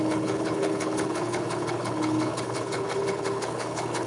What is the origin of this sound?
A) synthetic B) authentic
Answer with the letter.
A